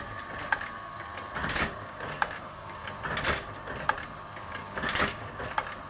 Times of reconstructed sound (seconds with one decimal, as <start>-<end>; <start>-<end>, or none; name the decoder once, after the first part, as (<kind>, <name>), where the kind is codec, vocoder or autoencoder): 1.4-2.9 (codec, DAC); 4.6-5.4